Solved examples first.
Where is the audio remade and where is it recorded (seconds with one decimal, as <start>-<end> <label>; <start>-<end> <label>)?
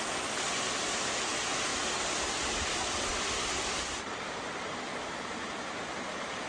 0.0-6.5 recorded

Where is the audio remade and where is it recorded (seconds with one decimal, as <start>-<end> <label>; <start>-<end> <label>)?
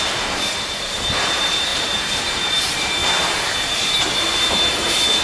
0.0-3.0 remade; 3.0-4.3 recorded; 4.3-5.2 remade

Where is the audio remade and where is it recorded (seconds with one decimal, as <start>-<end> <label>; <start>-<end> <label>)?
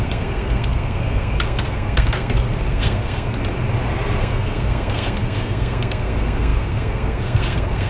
0.0-3.4 remade; 3.4-4.2 recorded; 4.2-7.9 remade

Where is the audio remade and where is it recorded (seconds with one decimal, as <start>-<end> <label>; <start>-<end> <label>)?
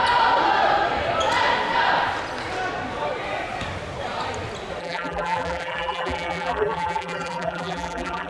0.0-4.8 recorded; 4.8-8.3 remade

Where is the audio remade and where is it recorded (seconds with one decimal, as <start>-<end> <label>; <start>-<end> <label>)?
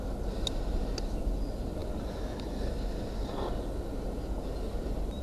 0.0-5.2 recorded